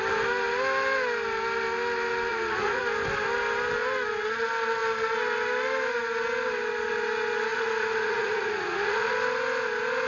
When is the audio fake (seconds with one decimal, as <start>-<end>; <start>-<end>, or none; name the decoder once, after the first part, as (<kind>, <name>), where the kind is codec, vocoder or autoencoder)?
2.3-2.8 (vocoder, Vocos); 7.5-9.1